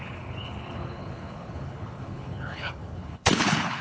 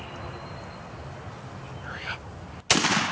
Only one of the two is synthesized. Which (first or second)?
first